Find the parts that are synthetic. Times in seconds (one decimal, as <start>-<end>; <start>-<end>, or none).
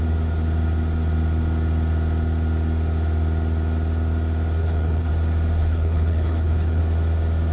4.6-5.1; 5.6-6.8